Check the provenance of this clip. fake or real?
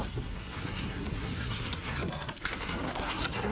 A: fake